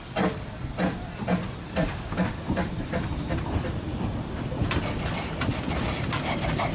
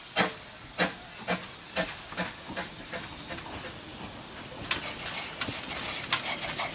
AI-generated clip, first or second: first